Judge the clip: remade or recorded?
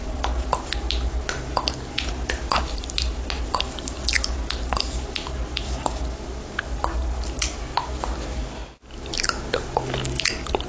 recorded